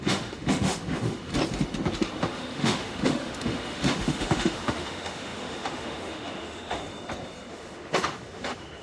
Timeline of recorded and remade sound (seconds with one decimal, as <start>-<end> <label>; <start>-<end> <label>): 0.0-1.3 remade; 1.3-2.2 recorded; 2.2-6.8 remade; 6.8-7.5 recorded; 7.5-8.8 remade

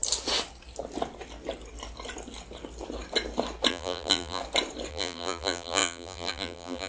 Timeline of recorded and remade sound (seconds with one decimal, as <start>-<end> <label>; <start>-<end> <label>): 0.0-3.7 recorded; 3.7-4.4 remade; 4.4-4.9 recorded; 4.9-6.9 remade

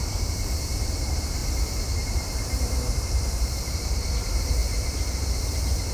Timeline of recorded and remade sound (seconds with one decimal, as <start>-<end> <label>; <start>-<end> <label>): 0.0-5.9 remade

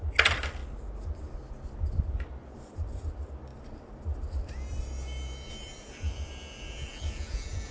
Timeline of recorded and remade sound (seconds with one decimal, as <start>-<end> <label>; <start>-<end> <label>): 0.0-0.6 remade; 0.6-2.1 recorded; 2.1-7.7 remade

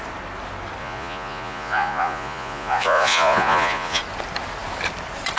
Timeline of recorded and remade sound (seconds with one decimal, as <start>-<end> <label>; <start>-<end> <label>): 0.0-0.8 recorded; 0.8-4.0 remade; 4.0-5.4 recorded

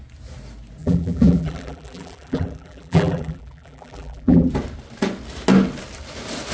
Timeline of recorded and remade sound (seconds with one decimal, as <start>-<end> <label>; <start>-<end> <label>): 0.0-0.8 recorded; 0.8-4.5 remade; 4.5-6.5 recorded